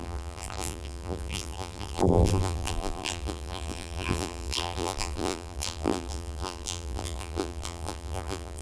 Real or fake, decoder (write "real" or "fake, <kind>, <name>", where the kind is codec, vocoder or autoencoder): fake, vocoder, BigVGAN v2